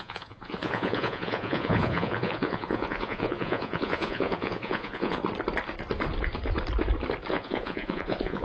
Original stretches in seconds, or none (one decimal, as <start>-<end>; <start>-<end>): 5.2-7.3